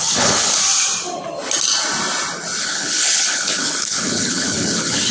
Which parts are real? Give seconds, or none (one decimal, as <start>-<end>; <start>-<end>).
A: 0.6-2.6

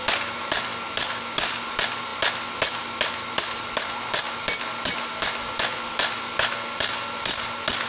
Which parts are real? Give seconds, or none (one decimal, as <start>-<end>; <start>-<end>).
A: 0.0-7.9

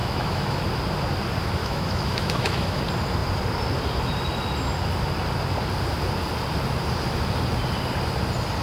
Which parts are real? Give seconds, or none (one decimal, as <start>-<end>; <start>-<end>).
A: 0.6-1.6; 2.8-8.6

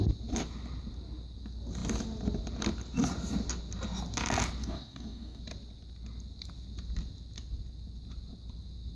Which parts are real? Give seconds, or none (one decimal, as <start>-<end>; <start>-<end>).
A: 0.0-4.6; 5.4-8.9

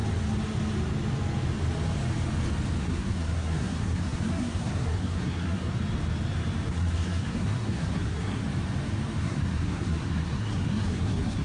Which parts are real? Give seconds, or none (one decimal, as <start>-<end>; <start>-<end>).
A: 0.0-2.8; 5.7-6.7; 8.4-9.2